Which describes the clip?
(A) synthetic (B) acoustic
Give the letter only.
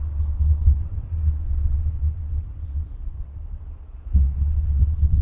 A